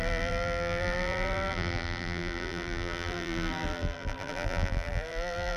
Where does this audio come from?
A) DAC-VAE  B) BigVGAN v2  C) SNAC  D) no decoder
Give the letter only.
B